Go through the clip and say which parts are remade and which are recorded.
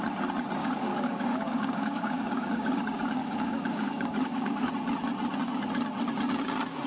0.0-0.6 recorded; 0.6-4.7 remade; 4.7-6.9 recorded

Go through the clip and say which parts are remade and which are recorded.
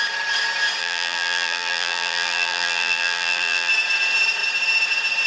0.0-0.8 recorded; 0.8-3.7 remade; 3.7-5.3 recorded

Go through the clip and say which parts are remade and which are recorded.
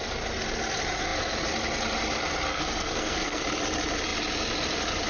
0.0-2.5 recorded; 2.5-3.4 remade; 3.4-5.1 recorded